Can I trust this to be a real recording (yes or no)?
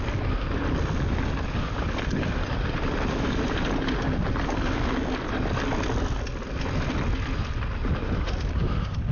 yes